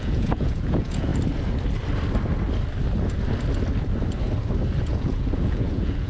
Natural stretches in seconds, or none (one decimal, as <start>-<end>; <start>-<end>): 1.1-4.8